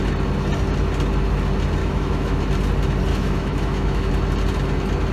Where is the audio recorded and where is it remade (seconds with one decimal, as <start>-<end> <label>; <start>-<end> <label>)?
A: 0.0-1.8 recorded; 1.8-2.4 remade; 2.4-3.1 recorded; 3.1-4.1 remade; 4.1-5.1 recorded